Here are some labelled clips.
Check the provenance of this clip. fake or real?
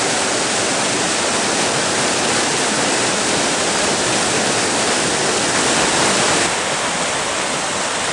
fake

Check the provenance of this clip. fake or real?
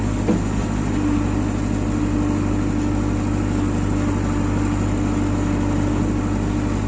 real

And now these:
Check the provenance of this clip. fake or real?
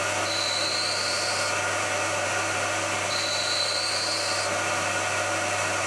real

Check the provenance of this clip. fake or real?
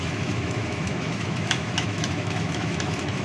fake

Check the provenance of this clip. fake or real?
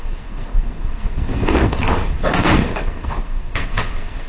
fake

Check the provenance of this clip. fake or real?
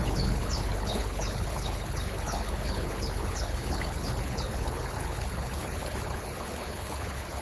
fake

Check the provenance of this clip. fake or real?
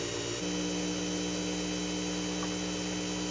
real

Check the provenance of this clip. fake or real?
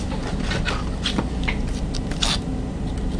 real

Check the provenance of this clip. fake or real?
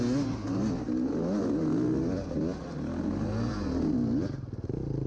real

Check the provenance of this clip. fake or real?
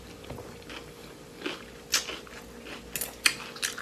real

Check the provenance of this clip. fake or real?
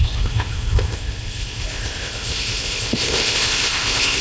fake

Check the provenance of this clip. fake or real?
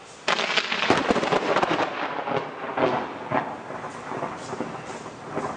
real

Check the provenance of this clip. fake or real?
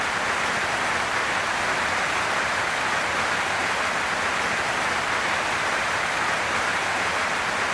fake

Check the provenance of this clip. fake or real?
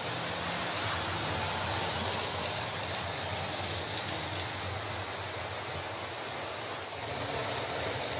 real